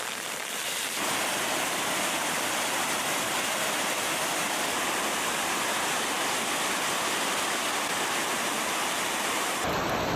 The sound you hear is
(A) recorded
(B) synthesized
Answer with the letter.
A